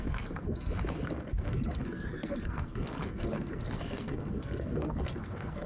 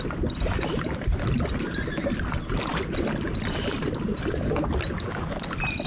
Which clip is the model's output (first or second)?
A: first